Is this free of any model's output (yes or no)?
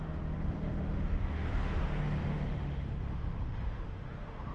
no